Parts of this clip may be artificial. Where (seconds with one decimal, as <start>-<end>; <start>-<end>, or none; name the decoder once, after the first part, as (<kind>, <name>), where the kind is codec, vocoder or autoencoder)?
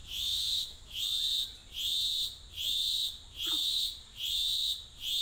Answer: 0.0-1.0 (autoencoder, DAC-VAE)